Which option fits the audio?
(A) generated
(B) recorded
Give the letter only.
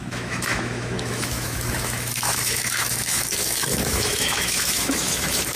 A